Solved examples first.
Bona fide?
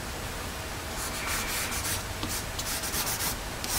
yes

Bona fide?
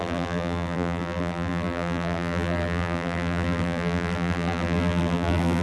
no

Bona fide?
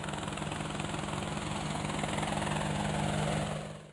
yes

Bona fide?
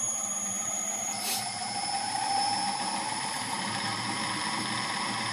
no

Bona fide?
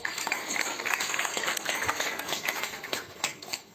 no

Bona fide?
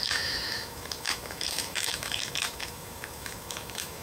no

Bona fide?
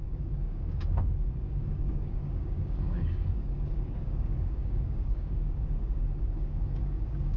no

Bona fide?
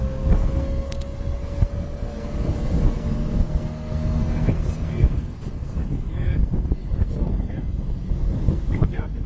no